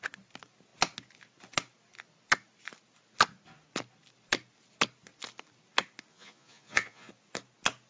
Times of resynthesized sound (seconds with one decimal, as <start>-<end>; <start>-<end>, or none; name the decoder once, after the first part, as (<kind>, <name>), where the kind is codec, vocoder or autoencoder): 6.1-7.1 (vocoder, Vocos)